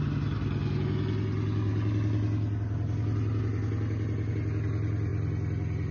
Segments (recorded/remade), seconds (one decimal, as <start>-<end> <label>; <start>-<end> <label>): 0.0-5.9 recorded